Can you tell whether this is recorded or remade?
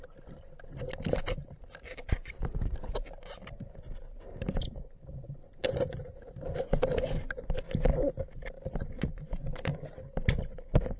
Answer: recorded